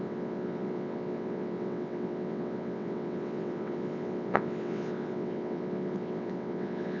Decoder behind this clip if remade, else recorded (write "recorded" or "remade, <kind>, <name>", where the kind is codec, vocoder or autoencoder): remade, vocoder, WaveNeXt